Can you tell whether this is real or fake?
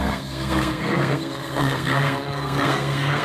fake